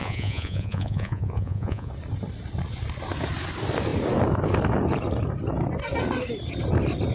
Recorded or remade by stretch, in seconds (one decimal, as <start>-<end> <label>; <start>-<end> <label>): 0.0-1.9 remade; 1.9-7.1 recorded